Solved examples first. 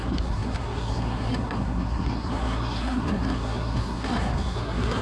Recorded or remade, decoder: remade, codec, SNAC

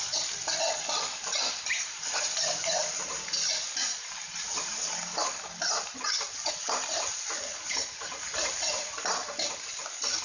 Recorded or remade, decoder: recorded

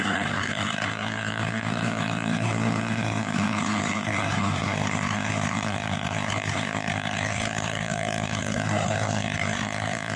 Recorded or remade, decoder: remade, codec, SNAC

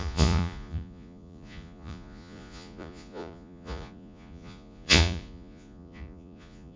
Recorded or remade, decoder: remade, vocoder, Vocos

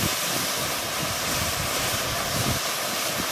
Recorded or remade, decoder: remade, vocoder, BigVGAN v2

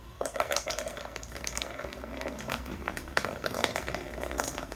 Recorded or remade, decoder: remade, codec, SNAC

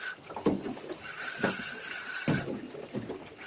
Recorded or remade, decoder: recorded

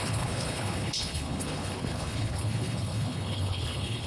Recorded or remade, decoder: remade, codec, HILCodec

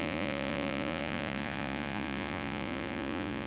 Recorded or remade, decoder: remade, vocoder, Vocos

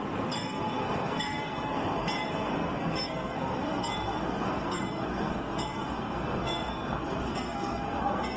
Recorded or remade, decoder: remade, codec, SNAC